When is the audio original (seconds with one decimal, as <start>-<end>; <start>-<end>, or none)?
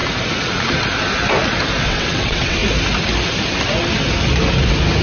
0.0-1.8; 2.6-5.0